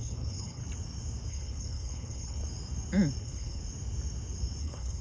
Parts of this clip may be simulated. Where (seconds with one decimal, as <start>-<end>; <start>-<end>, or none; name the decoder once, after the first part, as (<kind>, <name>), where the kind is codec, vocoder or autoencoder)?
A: 0.0-0.6 (codec, HILCodec); 1.3-2.4; 3.2-3.6; 4.6-5.0